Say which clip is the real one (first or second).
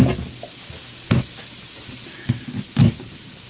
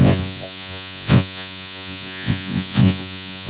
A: first